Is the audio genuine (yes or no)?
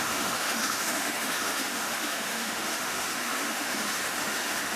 no